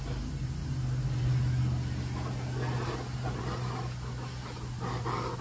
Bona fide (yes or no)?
yes